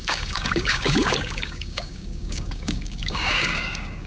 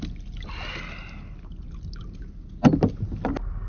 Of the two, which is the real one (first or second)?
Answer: second